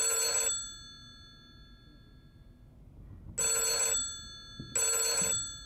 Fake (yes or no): no